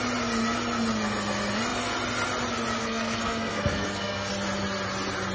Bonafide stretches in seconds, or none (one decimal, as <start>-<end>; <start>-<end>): 0.0-2.8; 4.3-5.3